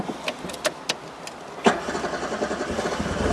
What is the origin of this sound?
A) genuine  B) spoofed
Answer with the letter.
A